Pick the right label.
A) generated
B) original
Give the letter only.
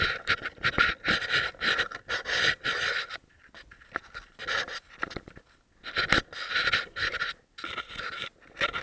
B